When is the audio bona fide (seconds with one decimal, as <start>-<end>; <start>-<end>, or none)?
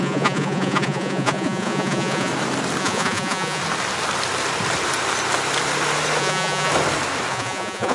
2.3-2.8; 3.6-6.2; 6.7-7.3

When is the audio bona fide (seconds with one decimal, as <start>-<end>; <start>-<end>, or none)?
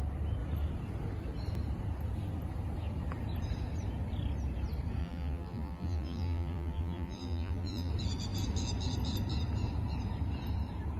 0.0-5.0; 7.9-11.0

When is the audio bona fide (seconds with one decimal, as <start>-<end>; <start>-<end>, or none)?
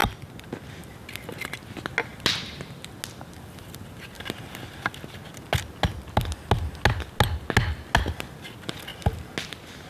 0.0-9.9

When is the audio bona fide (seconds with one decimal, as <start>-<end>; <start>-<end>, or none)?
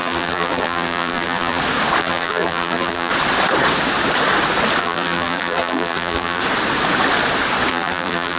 1.6-2.0; 3.1-4.8; 6.4-7.7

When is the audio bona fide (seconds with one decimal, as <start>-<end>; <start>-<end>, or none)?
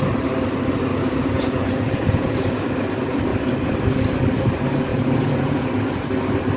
0.0-0.9; 2.6-4.9; 5.7-6.6